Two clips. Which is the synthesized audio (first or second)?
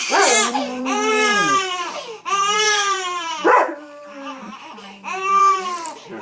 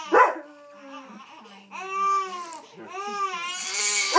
first